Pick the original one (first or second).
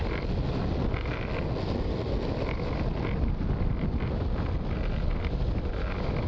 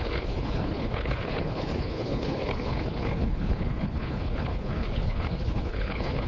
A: first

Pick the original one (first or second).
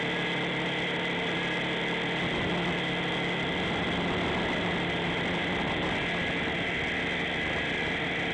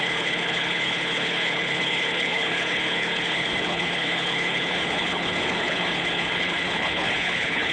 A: first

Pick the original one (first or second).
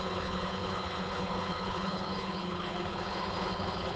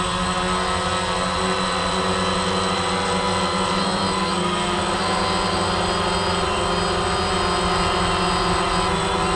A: second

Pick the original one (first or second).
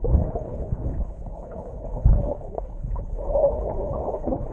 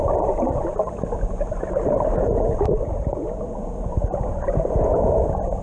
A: second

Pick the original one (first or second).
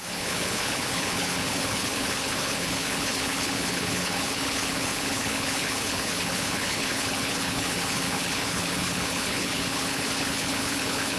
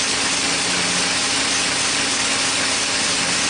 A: second